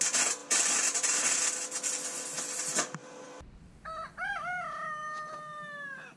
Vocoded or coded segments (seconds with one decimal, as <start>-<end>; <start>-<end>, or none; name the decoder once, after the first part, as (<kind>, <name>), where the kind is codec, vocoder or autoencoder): 0.4-1.4 (vocoder, BigVGAN v2); 3.0-3.7; 5.0-6.2